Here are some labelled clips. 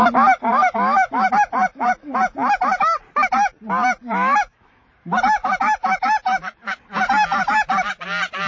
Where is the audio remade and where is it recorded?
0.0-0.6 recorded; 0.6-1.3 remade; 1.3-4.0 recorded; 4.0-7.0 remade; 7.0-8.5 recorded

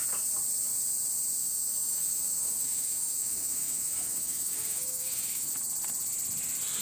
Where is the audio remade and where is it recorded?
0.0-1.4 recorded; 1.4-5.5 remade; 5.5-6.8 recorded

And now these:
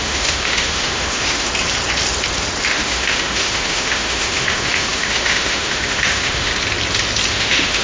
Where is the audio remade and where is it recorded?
0.0-1.5 remade; 1.5-2.7 recorded; 2.7-6.5 remade; 6.5-7.3 recorded; 7.3-7.8 remade

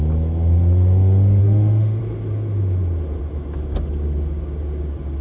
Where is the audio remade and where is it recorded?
0.0-1.4 recorded; 1.4-2.0 remade; 2.0-5.2 recorded